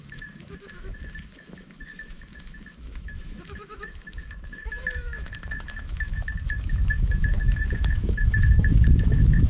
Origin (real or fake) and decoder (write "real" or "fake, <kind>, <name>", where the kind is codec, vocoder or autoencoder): fake, autoencoder, DAC-VAE